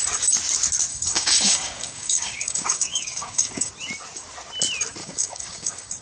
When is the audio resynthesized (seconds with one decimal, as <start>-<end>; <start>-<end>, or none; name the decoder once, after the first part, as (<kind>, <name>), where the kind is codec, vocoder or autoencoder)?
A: 0.9-3.7 (codec, DAC); 5.0-6.0

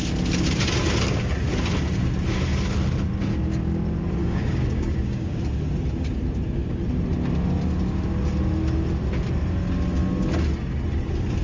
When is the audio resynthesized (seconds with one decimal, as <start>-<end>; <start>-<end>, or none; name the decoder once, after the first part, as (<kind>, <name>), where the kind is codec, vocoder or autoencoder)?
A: 4.2-5.4 (codec, DAC)

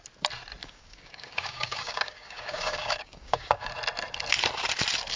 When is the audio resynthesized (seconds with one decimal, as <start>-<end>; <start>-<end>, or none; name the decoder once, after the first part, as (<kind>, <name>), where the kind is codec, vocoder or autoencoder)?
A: 0.6-3.7 (codec, DAC)